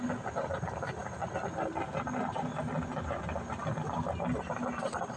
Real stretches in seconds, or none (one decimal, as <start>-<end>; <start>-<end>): 0.0-5.2